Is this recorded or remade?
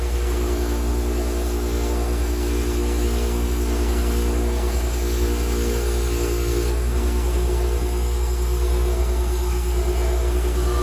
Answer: remade